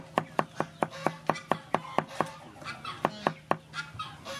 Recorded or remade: recorded